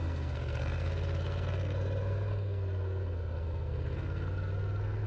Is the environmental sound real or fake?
fake